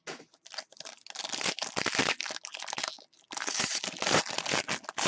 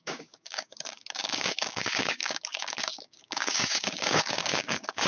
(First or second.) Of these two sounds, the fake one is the second